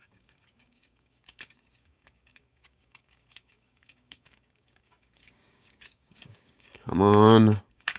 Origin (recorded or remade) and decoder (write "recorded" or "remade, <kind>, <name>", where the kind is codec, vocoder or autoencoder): remade, codec, DAC